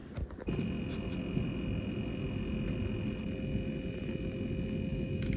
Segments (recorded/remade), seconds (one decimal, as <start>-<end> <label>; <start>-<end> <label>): 0.0-4.9 recorded; 4.9-5.4 remade